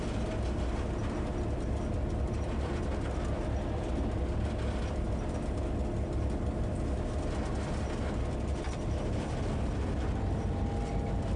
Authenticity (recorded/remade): recorded